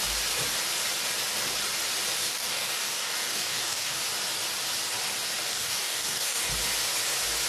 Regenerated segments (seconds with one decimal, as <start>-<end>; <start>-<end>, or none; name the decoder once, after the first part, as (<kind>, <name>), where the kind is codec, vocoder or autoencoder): 2.2-4.0 (codec, DAC); 5.5-6.5